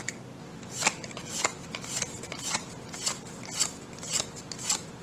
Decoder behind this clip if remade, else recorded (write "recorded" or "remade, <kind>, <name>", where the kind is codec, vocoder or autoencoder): recorded